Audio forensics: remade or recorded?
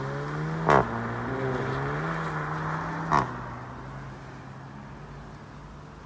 recorded